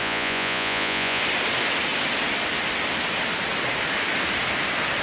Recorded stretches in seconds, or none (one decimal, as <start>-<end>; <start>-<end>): 1.2-5.0